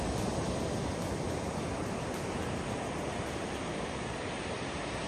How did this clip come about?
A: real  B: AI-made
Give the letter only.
A